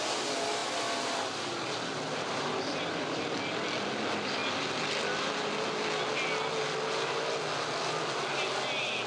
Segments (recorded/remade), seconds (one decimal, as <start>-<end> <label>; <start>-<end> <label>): 0.0-9.1 recorded